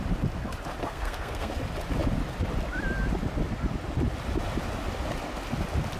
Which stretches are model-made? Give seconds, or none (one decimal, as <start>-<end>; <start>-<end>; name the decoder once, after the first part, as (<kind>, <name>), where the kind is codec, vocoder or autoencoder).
0.8-1.5 (codec, SNAC)